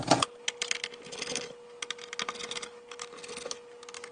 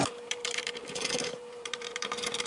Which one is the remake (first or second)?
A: second